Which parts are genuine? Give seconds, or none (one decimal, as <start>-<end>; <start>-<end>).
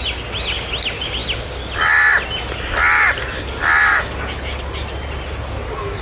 0.0-6.0